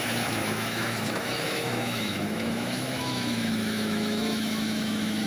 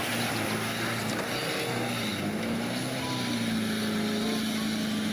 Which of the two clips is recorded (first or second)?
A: second